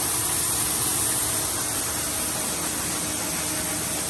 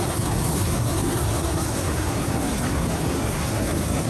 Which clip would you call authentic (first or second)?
first